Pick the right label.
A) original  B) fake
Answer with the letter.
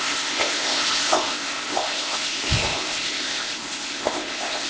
B